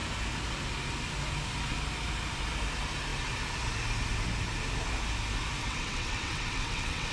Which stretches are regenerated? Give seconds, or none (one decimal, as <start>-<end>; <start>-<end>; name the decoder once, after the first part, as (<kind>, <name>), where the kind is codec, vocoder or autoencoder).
5.6-7.1 (vocoder, WaveNeXt)